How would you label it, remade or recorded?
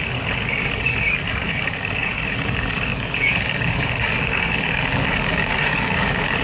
remade